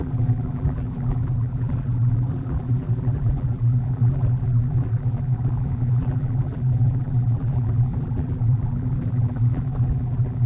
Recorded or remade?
remade